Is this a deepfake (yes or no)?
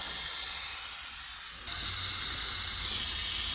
no